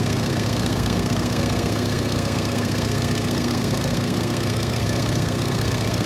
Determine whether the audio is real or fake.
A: fake